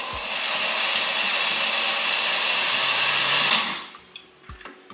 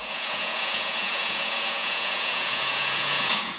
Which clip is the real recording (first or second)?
first